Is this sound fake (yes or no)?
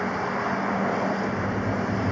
no